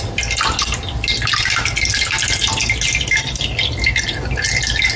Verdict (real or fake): real